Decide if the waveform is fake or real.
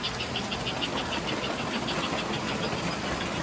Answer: real